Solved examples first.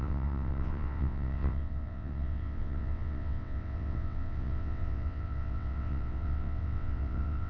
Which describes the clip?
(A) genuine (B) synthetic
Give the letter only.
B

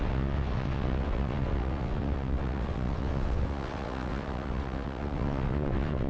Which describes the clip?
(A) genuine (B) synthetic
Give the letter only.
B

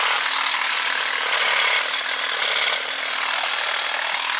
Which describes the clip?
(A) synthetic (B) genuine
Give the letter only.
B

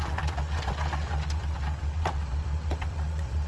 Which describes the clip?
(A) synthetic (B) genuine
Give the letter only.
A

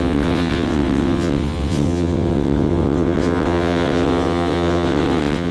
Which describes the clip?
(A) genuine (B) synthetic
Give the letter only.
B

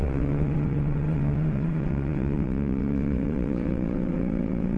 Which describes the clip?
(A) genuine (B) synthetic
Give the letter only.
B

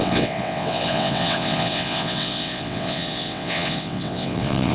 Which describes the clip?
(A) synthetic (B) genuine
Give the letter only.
A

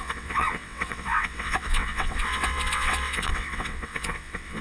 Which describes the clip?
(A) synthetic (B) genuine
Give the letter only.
A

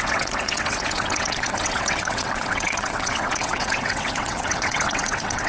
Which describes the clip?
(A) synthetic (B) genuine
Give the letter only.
A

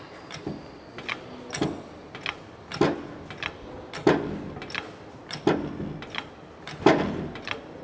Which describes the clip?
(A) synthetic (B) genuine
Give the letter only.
B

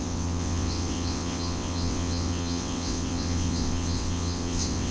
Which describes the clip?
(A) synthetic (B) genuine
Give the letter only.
A